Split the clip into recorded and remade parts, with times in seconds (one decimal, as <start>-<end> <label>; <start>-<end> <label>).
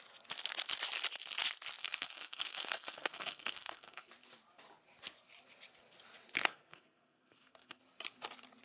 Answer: 0.0-1.8 recorded; 1.8-4.1 remade; 4.1-6.5 recorded; 6.5-7.8 remade; 7.8-8.6 recorded